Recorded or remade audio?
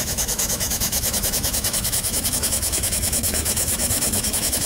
remade